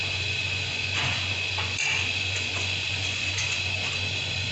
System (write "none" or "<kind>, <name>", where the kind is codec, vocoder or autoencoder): vocoder, Vocos